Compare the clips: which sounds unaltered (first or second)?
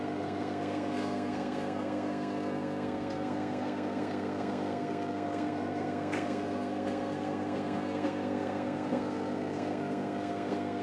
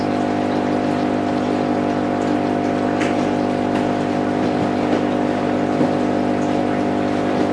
second